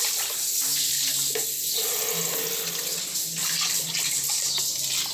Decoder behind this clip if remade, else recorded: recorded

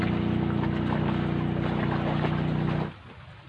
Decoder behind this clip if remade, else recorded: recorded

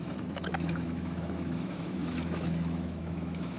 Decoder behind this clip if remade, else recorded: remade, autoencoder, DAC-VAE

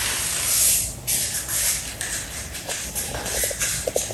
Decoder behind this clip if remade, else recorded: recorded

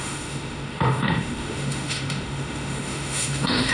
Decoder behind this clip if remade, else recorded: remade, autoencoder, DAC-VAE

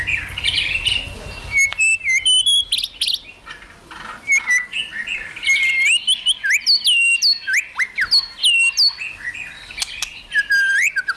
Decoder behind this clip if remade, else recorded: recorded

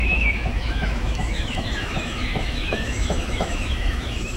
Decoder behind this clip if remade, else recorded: remade, autoencoder, DAC-VAE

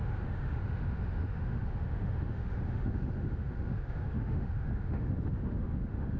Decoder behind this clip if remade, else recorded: remade, autoencoder, DAC-VAE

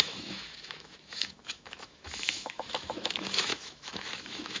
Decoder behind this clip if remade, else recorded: remade, autoencoder, DAC-VAE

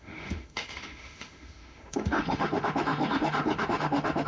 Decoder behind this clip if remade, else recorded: remade, autoencoder, DAC-VAE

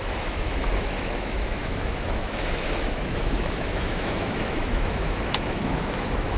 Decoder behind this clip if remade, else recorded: remade, autoencoder, DAC-VAE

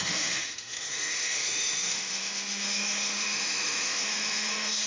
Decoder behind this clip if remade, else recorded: remade, autoencoder, DAC-VAE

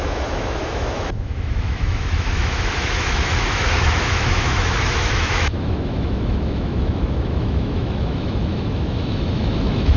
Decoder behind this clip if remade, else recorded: remade, autoencoder, DAC-VAE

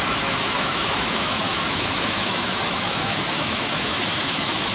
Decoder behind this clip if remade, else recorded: remade, autoencoder, DAC-VAE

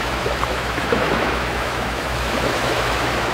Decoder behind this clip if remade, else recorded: remade, autoencoder, DAC-VAE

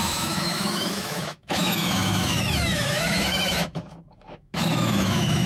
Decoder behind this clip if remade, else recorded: remade, autoencoder, DAC-VAE